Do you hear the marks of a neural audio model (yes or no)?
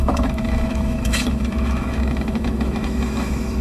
yes